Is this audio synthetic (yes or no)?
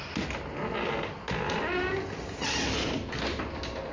no